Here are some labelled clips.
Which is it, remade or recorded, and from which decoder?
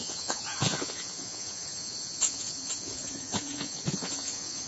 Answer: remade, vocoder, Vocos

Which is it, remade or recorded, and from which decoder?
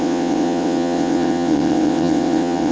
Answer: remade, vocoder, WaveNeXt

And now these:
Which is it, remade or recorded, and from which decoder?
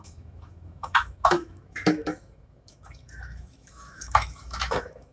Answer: remade, autoencoder, DAC-VAE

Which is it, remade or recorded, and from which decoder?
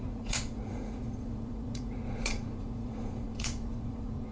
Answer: remade, vocoder, Vocos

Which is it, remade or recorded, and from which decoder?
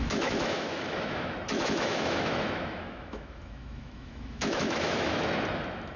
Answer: remade, autoencoder, DAC-VAE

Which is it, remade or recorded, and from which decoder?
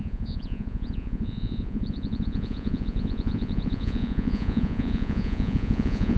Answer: remade, vocoder, Vocos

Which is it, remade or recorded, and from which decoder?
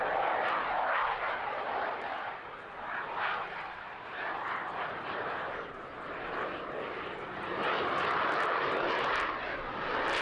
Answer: recorded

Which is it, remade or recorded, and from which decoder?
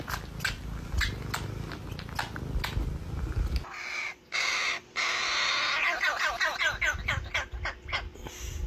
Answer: recorded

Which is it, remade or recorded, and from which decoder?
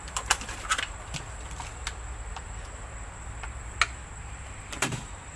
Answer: recorded